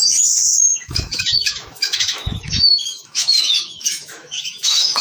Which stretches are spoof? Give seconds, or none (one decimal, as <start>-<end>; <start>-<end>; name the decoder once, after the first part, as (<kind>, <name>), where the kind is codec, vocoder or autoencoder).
0.0-5.0 (autoencoder, DAC-VAE)